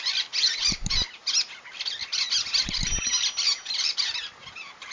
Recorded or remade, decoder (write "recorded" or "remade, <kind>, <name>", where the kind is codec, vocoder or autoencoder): recorded